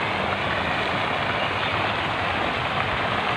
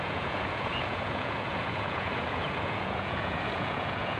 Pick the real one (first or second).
first